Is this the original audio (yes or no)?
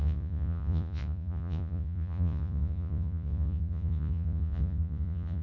no